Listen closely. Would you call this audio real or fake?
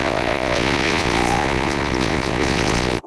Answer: fake